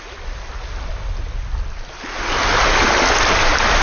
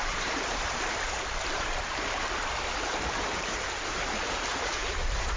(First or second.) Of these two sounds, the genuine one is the first